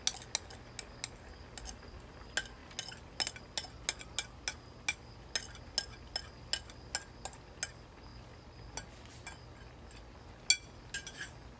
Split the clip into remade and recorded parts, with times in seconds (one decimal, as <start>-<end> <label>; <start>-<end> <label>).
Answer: 0.0-11.6 recorded